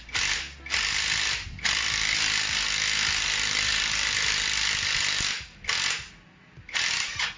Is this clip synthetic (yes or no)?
no